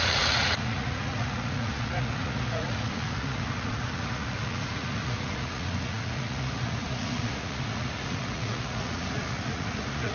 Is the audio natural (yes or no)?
no